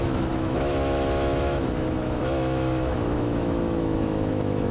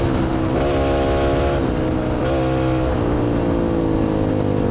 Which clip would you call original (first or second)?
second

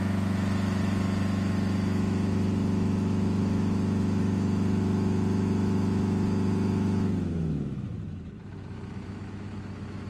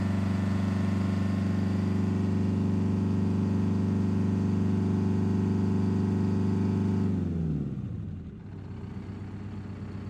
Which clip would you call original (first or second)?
second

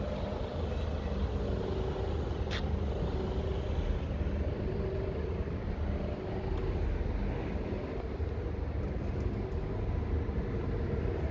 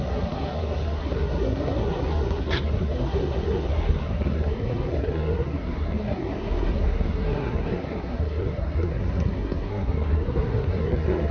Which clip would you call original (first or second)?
first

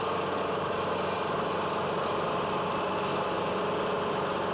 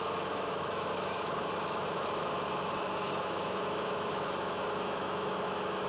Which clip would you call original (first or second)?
first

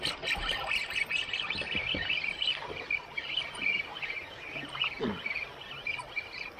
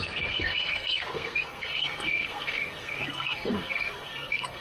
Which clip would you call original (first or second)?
first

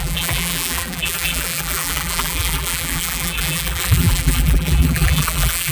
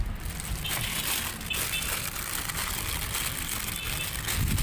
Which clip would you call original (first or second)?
second